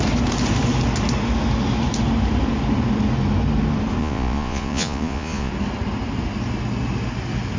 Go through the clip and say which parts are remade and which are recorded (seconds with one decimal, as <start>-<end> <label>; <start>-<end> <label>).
0.0-4.0 recorded; 4.0-5.5 remade; 5.5-7.6 recorded